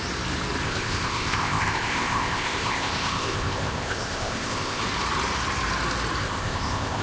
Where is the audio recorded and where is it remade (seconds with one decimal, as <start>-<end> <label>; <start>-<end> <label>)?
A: 0.0-0.6 recorded; 0.6-4.8 remade; 4.8-6.2 recorded; 6.2-7.0 remade